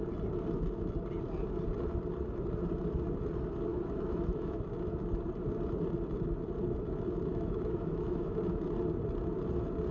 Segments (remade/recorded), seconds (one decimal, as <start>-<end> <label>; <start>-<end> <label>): 0.0-3.7 recorded; 3.7-4.6 remade; 4.6-7.3 recorded; 7.3-8.4 remade; 8.4-9.9 recorded